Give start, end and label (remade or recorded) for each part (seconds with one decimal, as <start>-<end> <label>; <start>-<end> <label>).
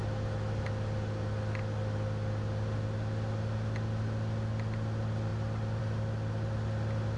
0.0-7.2 recorded